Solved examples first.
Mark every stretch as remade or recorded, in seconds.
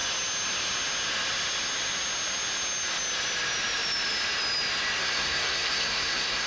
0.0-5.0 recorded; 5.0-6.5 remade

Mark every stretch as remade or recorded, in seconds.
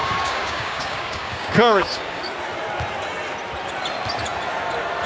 0.0-2.2 remade; 2.2-5.1 recorded